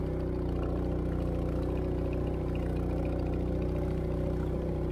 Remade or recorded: recorded